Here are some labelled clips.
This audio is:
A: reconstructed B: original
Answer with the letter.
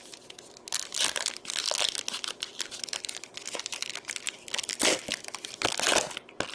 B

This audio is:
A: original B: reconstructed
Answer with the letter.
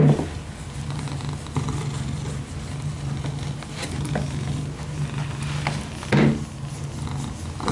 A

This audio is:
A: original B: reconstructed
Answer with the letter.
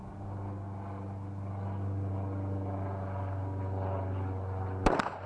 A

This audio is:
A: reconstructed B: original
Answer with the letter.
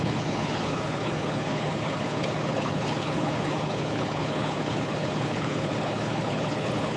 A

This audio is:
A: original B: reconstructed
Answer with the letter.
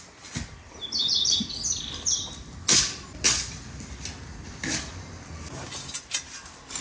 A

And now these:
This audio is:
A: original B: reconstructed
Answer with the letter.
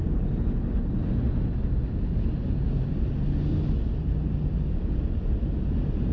A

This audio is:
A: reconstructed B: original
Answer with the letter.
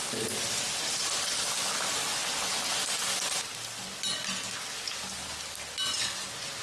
B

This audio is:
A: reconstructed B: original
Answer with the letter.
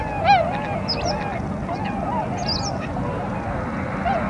B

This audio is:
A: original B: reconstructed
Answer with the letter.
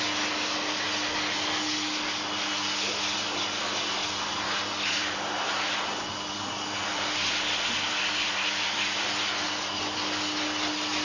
A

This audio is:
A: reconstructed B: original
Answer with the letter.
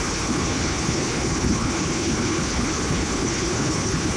A